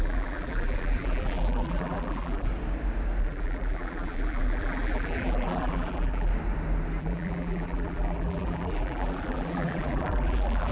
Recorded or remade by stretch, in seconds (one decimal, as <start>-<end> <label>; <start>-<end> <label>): 0.0-2.5 remade; 2.5-3.2 recorded; 3.2-6.3 remade; 6.3-7.0 recorded; 7.0-10.7 remade